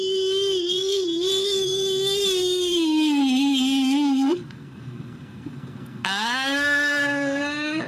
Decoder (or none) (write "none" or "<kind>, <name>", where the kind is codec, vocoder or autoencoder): codec, SNAC